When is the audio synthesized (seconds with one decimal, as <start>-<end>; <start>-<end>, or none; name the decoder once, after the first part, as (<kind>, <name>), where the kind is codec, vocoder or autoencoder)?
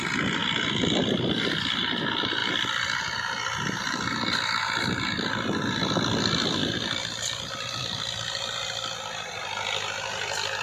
none